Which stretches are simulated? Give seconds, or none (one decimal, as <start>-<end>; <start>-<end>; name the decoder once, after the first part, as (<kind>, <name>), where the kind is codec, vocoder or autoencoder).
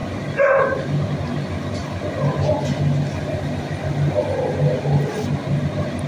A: none